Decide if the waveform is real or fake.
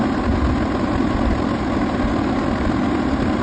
real